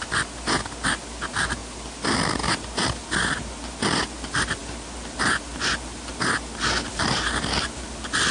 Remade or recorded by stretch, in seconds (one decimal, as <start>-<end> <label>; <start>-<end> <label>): 0.0-8.3 recorded